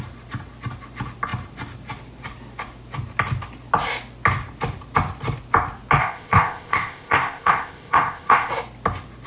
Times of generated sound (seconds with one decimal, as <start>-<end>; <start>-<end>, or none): 6.0-8.5